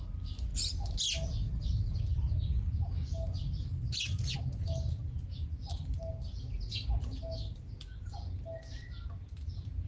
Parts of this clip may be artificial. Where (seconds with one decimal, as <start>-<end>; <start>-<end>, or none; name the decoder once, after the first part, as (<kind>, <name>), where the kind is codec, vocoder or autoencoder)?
none